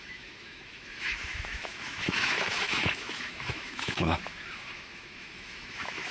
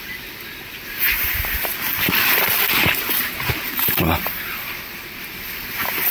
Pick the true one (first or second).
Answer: second